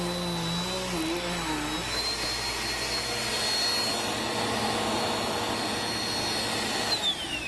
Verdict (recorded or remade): recorded